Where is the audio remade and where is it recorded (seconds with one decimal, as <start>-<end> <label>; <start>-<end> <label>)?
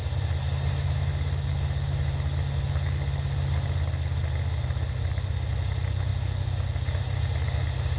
0.0-8.0 recorded